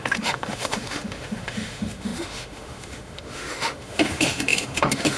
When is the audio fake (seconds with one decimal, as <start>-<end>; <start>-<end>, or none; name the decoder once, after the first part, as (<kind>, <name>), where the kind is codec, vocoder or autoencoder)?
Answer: 0.0-5.2 (autoencoder, DAC-VAE)